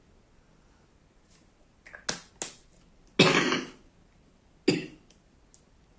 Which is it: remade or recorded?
recorded